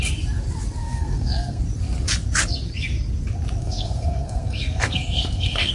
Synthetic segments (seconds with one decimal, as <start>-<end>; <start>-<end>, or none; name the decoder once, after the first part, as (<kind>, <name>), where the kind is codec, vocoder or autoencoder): 0.8-1.6 (codec, SNAC); 3.6-5.7